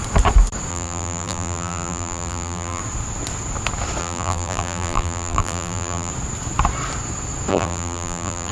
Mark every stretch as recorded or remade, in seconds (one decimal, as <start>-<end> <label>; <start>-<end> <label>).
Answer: 0.0-0.7 recorded; 0.7-2.8 remade; 2.8-4.0 recorded; 4.0-6.1 remade; 6.1-7.5 recorded; 7.5-8.5 remade